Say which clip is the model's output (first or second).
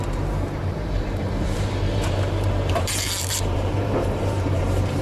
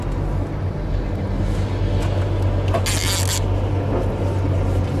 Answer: first